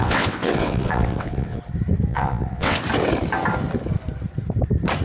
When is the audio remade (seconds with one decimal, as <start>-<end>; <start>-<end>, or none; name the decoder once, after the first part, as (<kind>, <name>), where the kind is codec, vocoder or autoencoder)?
0.0-1.6 (vocoder, WaveNeXt); 2.1-2.8